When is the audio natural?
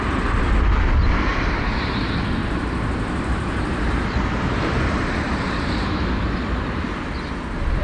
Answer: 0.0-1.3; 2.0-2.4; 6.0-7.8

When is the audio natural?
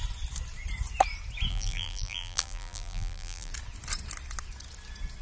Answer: 0.0-1.5; 3.5-5.2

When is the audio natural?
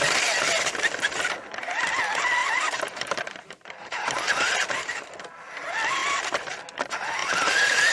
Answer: 0.0-2.4; 5.0-6.0; 6.6-7.2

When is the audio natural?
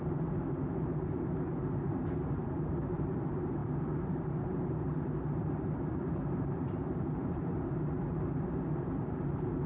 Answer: none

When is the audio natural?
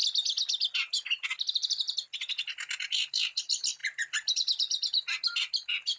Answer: 0.0-6.0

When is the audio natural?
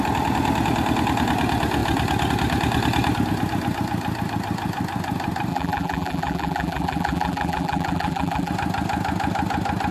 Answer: 0.0-5.5; 8.5-9.9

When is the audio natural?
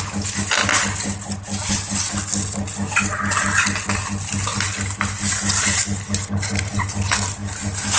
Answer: 0.0-8.0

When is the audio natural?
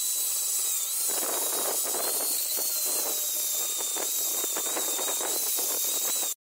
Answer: 0.0-3.9; 6.1-6.5